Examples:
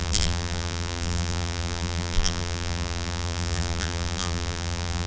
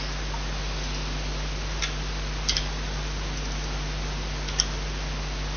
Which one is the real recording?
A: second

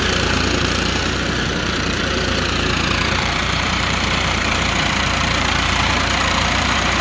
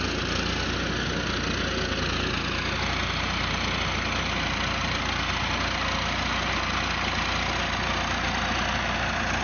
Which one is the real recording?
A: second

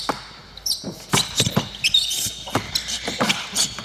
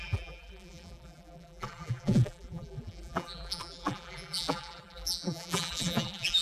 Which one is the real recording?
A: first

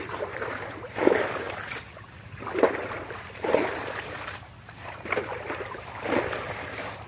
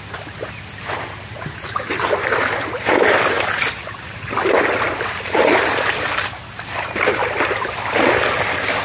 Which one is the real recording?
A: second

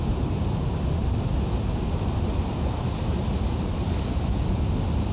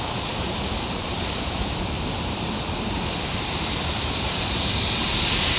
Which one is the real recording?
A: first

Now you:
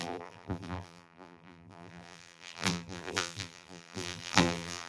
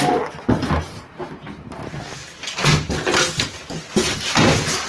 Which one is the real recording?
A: second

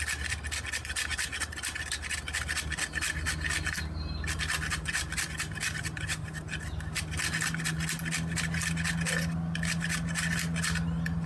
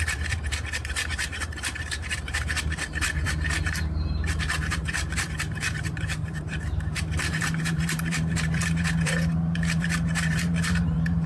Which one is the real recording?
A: first